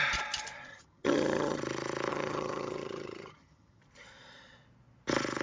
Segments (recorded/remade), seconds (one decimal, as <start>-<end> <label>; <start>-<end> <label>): 0.0-0.7 recorded; 0.7-1.6 remade; 1.6-2.1 recorded; 2.1-3.8 remade; 3.8-5.4 recorded